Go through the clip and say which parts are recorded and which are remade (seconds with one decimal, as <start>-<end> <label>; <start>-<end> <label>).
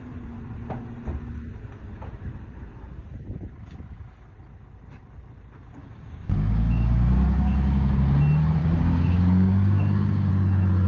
0.0-5.8 recorded; 5.8-8.0 remade; 8.0-8.6 recorded; 8.6-10.3 remade; 10.3-10.9 recorded